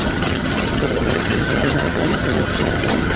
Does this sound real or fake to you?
fake